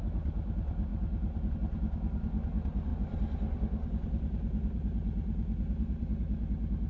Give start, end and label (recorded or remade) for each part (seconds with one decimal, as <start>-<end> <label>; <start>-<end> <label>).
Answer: 0.0-6.9 recorded